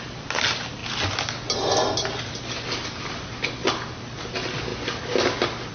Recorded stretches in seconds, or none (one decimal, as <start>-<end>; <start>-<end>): 0.0-5.7